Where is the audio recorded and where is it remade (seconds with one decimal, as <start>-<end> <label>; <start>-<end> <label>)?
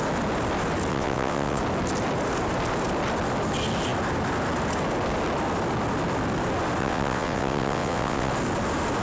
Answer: 0.0-0.9 recorded; 0.9-1.6 remade; 1.6-6.8 recorded; 6.8-8.3 remade; 8.3-9.0 recorded